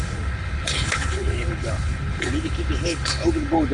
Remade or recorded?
remade